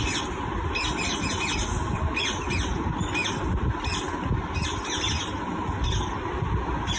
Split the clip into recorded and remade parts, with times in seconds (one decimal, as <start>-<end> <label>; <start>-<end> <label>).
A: 0.0-7.0 recorded